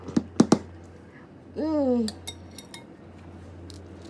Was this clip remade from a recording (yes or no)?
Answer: no